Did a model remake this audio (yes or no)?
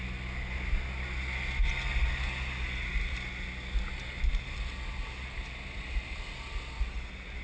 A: no